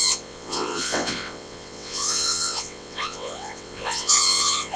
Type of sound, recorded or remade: remade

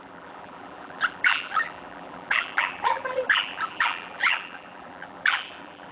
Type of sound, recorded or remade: remade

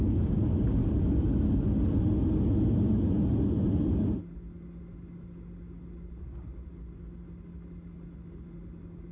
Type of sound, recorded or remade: recorded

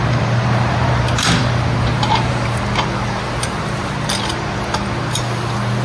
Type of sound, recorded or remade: remade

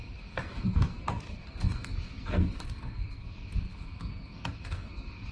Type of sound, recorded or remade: remade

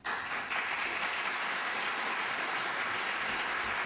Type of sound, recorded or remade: recorded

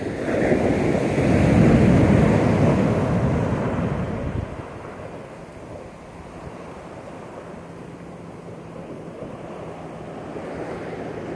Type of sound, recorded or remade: recorded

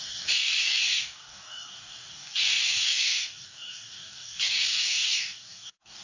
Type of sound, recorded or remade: remade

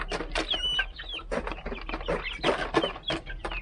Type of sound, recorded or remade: recorded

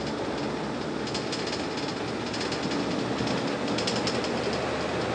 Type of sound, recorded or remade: recorded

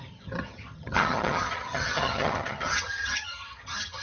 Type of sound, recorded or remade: remade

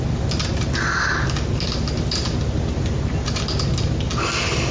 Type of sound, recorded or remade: recorded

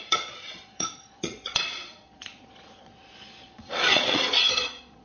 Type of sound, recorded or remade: remade